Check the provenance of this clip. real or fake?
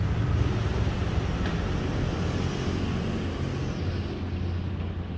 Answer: real